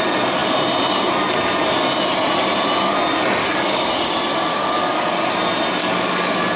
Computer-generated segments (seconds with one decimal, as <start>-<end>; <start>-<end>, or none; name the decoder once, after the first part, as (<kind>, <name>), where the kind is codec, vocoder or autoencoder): 3.4-4.1 (codec, DAC); 4.5-5.3; 5.8-6.6